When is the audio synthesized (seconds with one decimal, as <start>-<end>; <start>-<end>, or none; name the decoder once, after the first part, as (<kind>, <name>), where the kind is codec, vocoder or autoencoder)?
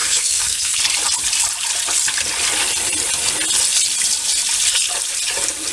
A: 0.0-0.8 (codec, SNAC)